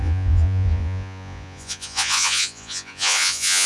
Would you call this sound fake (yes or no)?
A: yes